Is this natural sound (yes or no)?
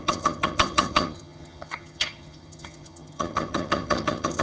no